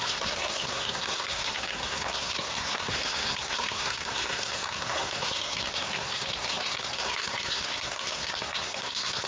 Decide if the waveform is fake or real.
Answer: fake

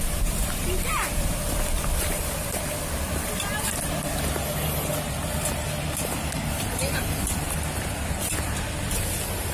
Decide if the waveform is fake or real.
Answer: real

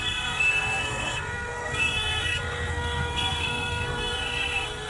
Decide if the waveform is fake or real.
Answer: fake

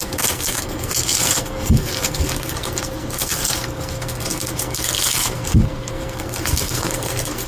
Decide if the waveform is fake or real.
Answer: fake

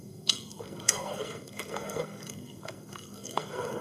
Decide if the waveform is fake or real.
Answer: fake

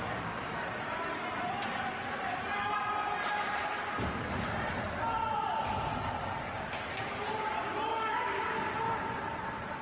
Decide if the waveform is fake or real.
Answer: real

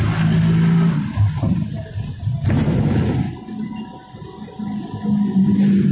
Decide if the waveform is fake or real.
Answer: real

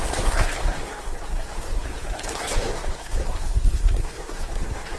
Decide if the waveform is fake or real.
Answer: fake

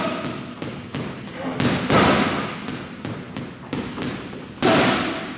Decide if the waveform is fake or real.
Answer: real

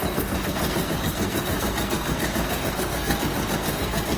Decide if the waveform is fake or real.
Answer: fake